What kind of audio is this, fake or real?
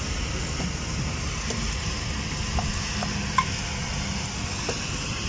real